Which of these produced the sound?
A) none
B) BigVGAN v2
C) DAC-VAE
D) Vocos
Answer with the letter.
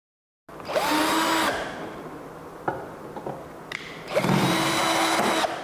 A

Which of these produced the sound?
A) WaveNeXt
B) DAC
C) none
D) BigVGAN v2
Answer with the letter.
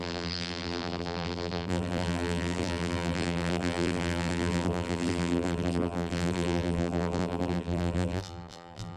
D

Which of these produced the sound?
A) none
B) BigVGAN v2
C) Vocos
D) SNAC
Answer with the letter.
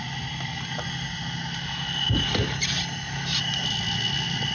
A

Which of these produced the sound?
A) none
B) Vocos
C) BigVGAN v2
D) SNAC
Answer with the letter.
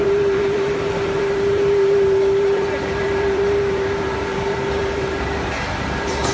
C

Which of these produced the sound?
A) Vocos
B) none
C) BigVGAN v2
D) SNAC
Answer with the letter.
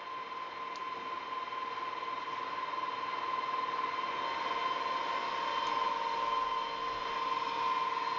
B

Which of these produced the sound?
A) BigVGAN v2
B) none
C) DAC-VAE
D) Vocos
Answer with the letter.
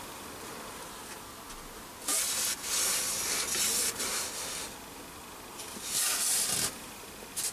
B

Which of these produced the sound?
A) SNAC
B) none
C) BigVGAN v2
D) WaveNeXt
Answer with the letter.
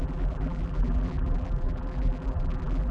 C